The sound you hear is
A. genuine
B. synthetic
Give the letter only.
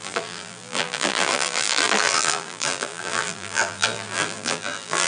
B